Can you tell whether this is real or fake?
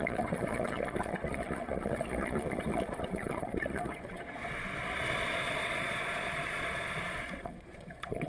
fake